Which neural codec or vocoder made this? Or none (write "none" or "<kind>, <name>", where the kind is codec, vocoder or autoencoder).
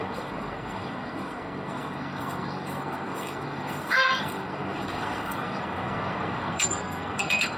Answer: codec, SNAC